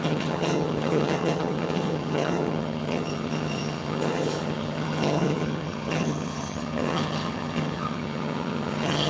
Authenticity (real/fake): fake